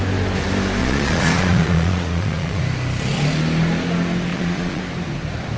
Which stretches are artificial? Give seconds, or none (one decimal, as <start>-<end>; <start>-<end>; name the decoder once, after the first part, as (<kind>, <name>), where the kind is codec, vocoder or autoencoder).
0.8-2.6 (vocoder, Vocos); 4.3-4.8